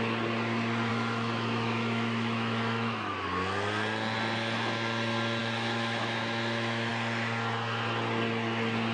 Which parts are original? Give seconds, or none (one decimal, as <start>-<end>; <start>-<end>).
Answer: 0.0-0.9; 3.1-5.4; 6.9-8.9